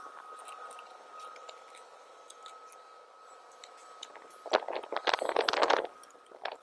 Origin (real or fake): real